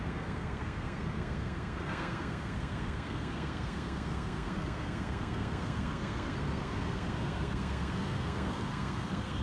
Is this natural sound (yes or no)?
no